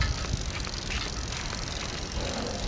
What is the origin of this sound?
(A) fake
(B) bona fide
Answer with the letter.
B